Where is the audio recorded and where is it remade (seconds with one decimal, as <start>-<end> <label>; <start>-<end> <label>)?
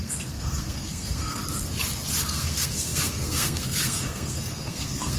0.0-1.4 remade; 1.4-2.2 recorded; 2.2-5.2 remade